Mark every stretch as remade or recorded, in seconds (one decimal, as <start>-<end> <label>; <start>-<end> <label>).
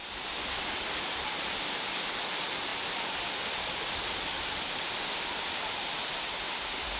0.0-7.0 remade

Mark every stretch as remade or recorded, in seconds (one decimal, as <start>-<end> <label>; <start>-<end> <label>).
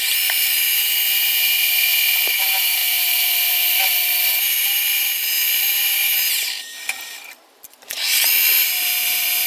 0.0-9.5 recorded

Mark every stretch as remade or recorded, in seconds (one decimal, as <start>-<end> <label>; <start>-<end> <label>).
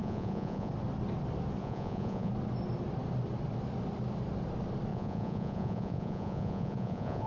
0.0-0.7 remade; 0.7-1.6 recorded; 1.6-2.3 remade; 2.3-4.9 recorded; 4.9-7.3 remade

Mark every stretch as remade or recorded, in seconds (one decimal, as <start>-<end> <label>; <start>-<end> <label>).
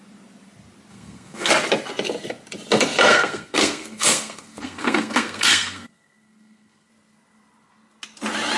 0.0-0.9 recorded; 0.9-1.5 remade; 1.5-3.1 recorded; 3.1-6.9 remade; 6.9-8.6 recorded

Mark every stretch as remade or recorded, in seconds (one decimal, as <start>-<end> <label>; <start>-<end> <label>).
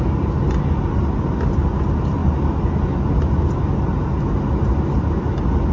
0.0-5.7 recorded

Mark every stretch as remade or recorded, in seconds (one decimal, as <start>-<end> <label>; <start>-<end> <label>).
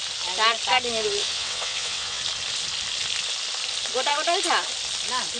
0.0-1.2 recorded; 1.2-2.2 remade; 2.2-5.4 recorded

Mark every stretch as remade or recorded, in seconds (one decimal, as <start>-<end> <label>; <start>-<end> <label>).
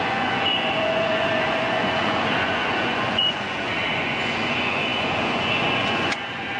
0.0-6.6 remade